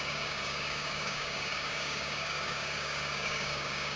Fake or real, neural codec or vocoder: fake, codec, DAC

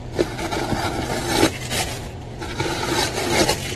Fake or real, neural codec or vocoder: real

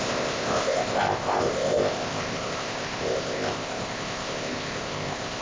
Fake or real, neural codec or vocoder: fake, codec, ZipCodec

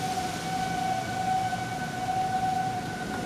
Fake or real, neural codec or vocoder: real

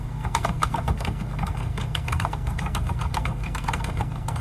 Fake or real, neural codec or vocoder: fake, codec, SNAC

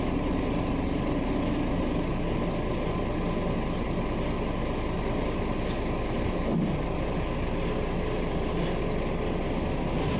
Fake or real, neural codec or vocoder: real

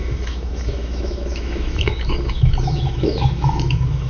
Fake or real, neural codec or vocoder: fake, autoencoder, DAC-VAE